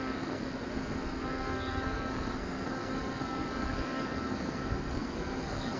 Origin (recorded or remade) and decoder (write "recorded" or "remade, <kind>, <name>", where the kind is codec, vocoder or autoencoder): remade, codec, SNAC